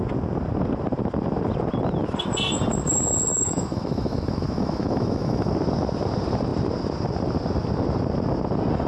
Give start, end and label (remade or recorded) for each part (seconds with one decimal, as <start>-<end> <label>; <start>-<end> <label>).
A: 0.0-3.3 recorded; 3.3-5.5 remade; 5.5-8.9 recorded

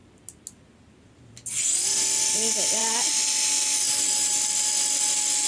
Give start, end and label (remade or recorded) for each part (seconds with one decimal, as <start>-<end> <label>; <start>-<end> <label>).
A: 0.0-5.5 recorded